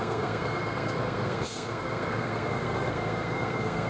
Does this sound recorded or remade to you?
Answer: remade